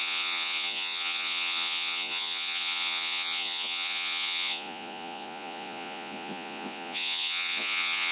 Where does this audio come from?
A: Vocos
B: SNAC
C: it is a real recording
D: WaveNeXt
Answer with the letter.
A